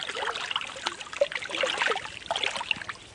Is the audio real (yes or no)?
yes